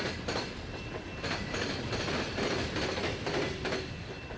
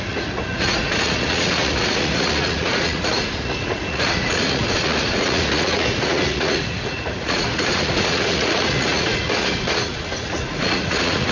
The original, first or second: first